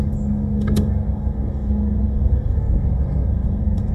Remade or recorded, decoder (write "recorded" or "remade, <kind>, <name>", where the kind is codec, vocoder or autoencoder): remade, codec, SNAC